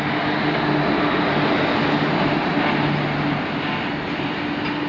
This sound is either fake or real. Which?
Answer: real